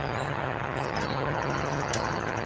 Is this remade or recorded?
remade